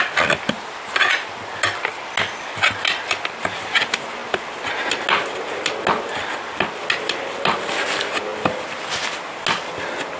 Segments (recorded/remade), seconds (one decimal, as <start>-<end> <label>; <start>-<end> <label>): 0.0-10.2 recorded